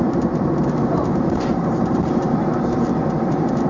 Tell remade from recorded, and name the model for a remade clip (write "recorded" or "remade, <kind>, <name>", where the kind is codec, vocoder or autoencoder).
remade, vocoder, BigVGAN v2